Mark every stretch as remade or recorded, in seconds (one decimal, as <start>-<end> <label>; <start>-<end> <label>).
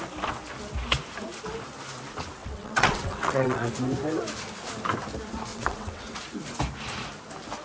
0.0-2.4 recorded; 2.4-3.7 remade; 3.7-5.5 recorded; 5.5-6.2 remade; 6.2-7.6 recorded